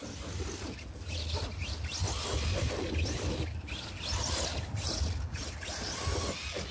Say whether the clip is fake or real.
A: real